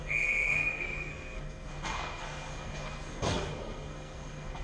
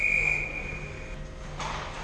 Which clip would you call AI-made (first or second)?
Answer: first